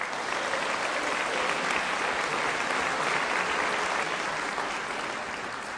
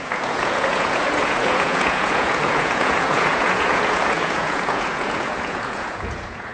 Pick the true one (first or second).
first